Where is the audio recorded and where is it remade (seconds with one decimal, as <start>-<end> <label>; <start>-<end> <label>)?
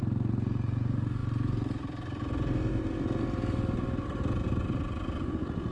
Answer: 0.0-5.7 recorded